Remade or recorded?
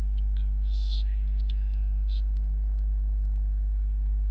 remade